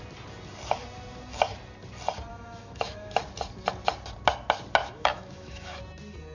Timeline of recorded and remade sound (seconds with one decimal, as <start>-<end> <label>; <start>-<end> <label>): 0.0-2.3 recorded; 2.3-3.2 remade; 3.2-4.8 recorded; 4.8-5.8 remade; 5.8-6.3 recorded